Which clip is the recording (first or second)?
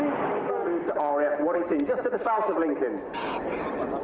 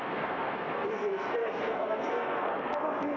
first